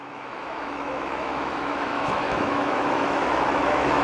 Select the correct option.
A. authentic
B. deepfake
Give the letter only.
B